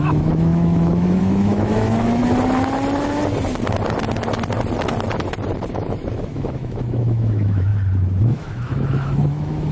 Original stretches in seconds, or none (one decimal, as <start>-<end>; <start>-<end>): 2.2-5.7; 7.7-8.2